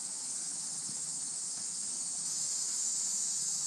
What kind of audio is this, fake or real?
fake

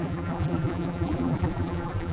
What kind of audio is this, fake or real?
fake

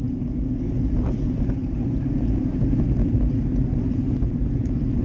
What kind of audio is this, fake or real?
real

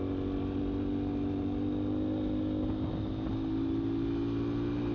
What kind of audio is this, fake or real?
real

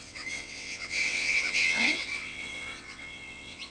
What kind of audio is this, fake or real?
fake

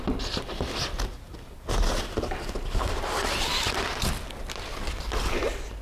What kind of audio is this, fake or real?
real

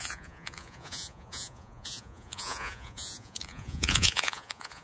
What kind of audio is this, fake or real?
fake